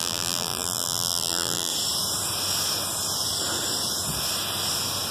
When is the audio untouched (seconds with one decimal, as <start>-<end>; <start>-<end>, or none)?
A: 1.7-5.1

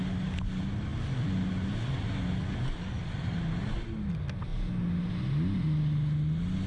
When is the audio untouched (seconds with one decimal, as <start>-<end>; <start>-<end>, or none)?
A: 0.0-6.7

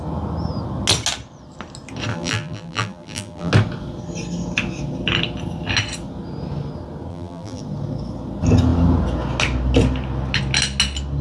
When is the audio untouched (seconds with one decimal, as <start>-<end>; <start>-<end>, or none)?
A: 0.0-2.1; 3.5-7.1; 7.6-11.2

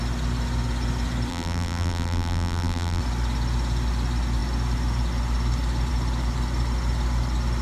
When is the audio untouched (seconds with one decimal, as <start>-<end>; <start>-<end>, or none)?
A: 0.0-1.3; 3.0-7.6

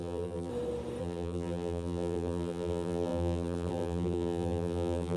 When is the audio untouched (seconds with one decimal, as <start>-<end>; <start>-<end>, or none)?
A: 0.5-1.0